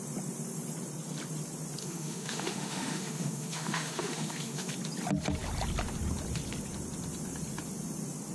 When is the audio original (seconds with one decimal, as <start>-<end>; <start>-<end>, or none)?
0.0-1.8; 4.7-8.3